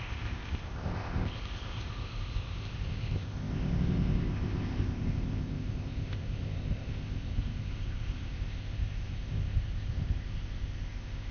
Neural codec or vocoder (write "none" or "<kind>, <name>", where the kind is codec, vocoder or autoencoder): codec, ZipCodec